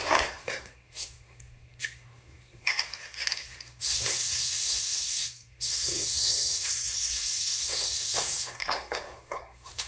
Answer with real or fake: fake